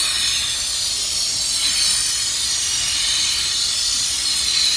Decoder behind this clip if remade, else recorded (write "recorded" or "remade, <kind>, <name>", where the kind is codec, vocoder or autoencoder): recorded